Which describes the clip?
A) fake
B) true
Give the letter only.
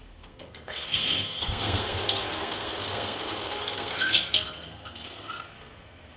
A